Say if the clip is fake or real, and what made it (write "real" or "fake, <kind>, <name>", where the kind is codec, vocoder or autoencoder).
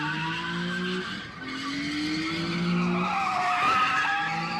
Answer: real